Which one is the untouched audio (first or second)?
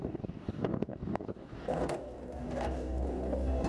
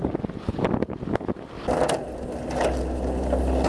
second